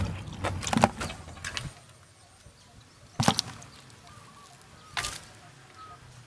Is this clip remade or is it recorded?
recorded